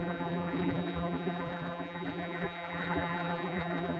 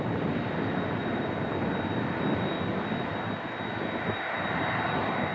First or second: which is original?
second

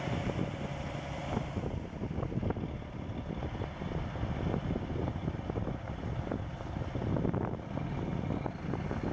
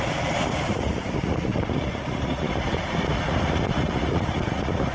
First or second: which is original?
first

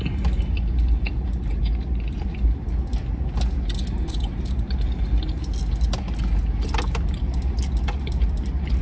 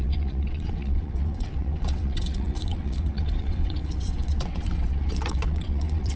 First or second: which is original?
first